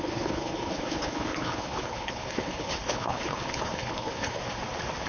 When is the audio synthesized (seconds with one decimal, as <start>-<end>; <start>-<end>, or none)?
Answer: 0.0-4.4